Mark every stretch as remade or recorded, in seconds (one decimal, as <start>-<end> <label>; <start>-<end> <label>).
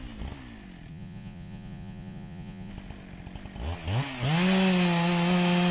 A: 0.0-0.9 recorded; 0.9-2.7 remade; 2.7-5.7 recorded